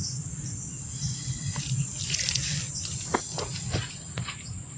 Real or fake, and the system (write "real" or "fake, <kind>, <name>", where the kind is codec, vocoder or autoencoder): real